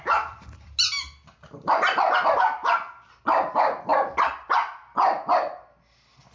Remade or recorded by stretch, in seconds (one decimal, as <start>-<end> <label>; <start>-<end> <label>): 0.0-6.3 recorded